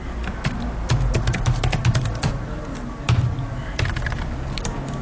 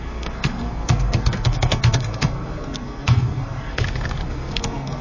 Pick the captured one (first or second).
first